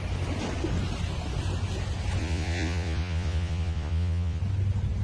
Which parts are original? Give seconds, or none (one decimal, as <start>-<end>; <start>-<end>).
0.0-2.2; 4.4-5.0